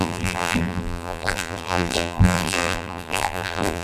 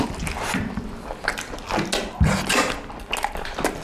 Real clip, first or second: second